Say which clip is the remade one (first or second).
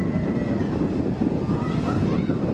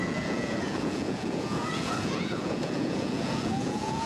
second